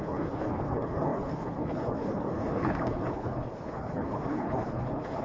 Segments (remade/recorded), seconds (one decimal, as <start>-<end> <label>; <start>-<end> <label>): 0.0-5.2 remade